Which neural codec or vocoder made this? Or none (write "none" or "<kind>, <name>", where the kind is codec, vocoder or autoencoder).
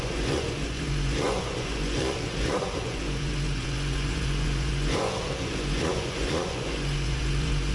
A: vocoder, Vocos